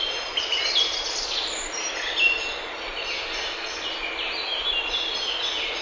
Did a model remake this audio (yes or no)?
no